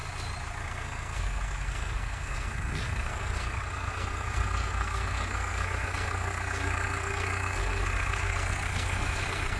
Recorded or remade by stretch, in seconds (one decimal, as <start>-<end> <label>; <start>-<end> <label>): 0.0-0.6 recorded; 0.6-9.6 remade